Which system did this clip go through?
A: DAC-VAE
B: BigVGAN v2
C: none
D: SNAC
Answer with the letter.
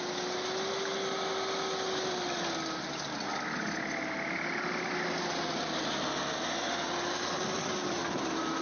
C